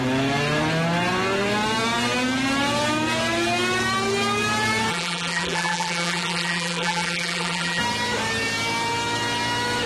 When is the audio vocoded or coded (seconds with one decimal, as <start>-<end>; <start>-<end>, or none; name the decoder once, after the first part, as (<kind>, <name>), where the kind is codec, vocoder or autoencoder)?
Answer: 4.9-7.8 (vocoder, BigVGAN v2)